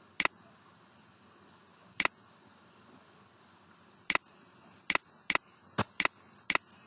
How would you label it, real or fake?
real